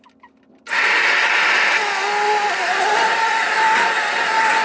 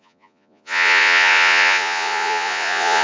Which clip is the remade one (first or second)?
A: second